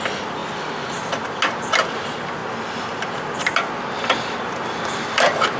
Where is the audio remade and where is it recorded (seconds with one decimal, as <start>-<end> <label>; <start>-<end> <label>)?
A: 0.0-5.6 recorded